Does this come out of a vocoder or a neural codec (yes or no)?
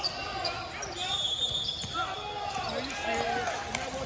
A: no